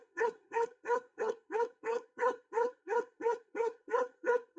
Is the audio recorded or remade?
remade